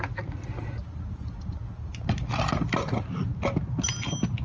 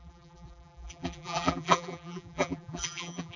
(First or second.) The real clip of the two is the first